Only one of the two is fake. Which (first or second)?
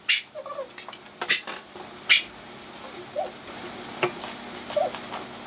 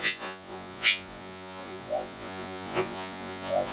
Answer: second